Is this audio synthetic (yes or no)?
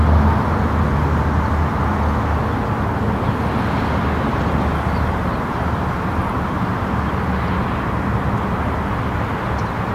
no